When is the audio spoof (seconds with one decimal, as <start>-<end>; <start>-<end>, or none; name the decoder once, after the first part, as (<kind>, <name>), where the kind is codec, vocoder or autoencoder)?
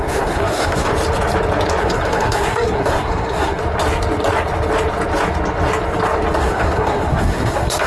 0.0-0.9 (codec, SNAC); 1.8-3.6; 6.4-7.9